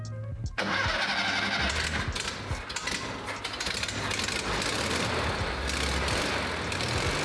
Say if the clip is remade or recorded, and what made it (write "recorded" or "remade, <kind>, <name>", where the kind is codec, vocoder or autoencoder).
recorded